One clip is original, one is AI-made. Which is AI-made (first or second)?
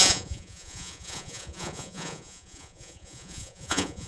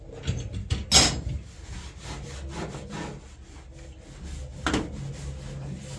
first